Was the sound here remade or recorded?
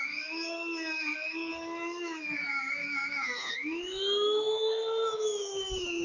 remade